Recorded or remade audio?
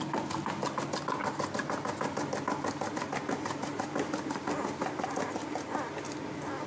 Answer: recorded